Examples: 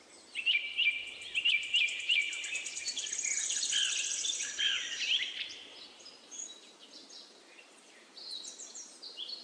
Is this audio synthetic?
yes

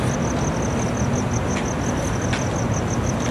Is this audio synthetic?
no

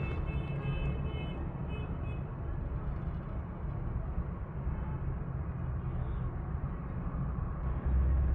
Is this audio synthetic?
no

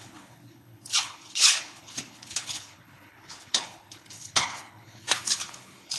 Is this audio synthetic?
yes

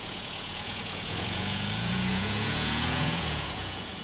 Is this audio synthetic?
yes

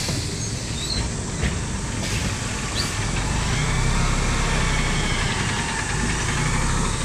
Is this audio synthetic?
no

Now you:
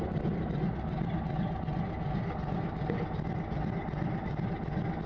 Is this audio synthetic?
no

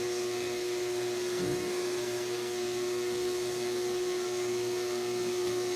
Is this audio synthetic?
yes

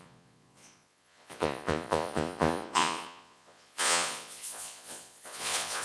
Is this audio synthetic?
yes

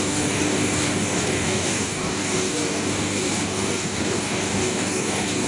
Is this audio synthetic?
yes